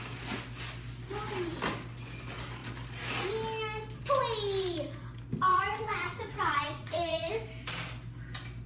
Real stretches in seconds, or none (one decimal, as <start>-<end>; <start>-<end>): 0.0-5.5; 7.3-8.7